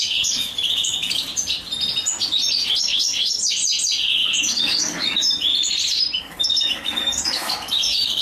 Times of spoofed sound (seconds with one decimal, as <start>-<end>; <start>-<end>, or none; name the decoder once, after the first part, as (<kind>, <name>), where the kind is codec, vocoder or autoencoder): 0.0-1.3 (codec, DAC); 2.8-3.6; 4.1-5.5; 6.2-8.2